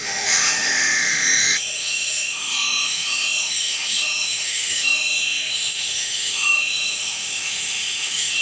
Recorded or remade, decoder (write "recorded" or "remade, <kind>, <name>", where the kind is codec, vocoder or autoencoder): remade, autoencoder, DAC-VAE